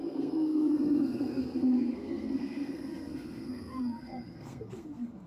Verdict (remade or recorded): remade